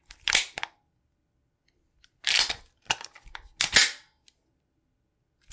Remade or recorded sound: recorded